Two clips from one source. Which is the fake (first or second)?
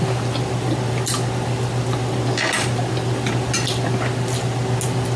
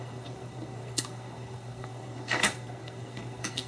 second